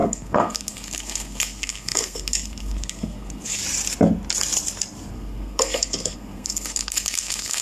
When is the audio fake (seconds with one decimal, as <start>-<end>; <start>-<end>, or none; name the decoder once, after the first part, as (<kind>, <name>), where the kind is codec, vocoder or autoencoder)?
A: 0.0-3.6 (codec, SNAC); 5.1-7.6